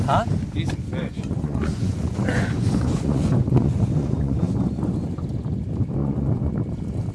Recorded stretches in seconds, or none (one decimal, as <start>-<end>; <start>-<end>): 0.0-1.0; 4.9-6.0; 6.5-7.1